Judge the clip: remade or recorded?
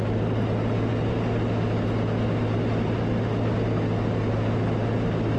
recorded